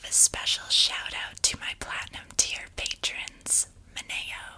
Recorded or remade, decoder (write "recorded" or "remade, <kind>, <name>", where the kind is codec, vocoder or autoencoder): recorded